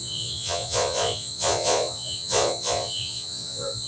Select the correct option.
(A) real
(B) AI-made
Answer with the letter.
B